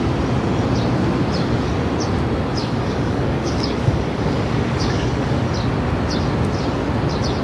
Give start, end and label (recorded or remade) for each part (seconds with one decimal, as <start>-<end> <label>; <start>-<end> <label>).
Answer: 0.0-2.6 recorded; 2.6-5.4 remade; 5.4-7.4 recorded